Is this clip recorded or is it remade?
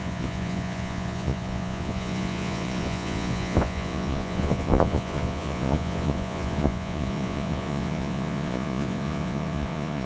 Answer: remade